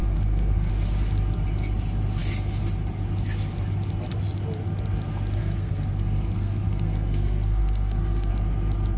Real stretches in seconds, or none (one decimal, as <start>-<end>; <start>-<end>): 0.7-5.4; 8.3-9.0